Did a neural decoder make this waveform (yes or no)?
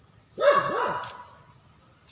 no